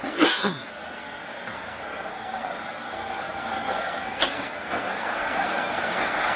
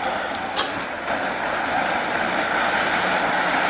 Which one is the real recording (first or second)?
second